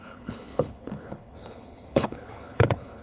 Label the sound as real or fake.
fake